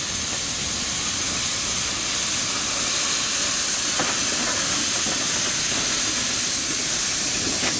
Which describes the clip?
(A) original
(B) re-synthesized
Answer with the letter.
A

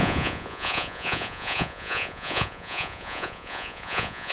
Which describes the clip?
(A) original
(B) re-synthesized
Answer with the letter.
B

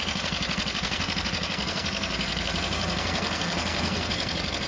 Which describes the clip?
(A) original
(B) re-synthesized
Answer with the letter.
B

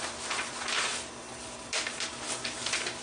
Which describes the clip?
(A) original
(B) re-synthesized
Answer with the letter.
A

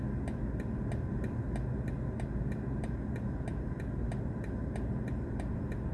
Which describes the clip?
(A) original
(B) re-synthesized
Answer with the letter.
A